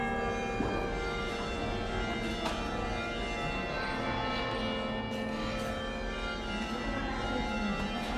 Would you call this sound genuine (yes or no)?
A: yes